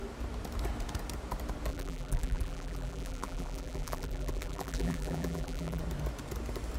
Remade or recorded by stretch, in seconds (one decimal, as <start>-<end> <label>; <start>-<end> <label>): 0.0-1.7 recorded; 1.7-5.8 remade; 5.8-6.8 recorded